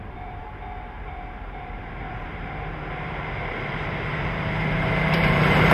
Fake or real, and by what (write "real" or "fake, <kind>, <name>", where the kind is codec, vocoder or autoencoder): fake, vocoder, BigVGAN v2